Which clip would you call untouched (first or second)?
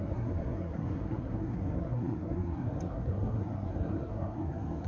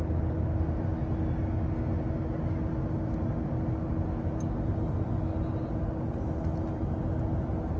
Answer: second